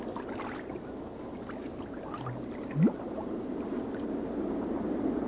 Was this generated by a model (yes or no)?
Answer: no